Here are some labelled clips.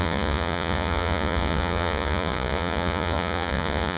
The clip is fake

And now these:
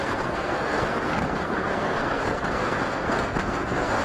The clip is fake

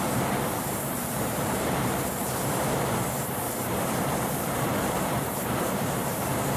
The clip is fake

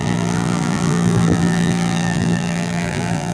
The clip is fake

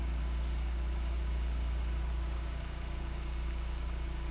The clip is fake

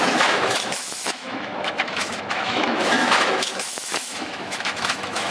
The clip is fake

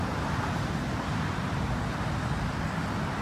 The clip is real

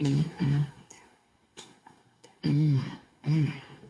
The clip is fake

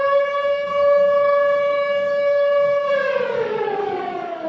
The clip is fake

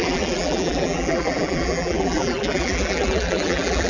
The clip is fake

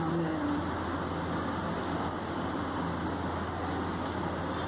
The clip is real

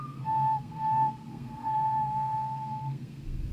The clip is fake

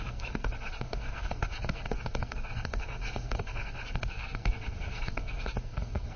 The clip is fake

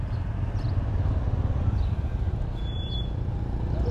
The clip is real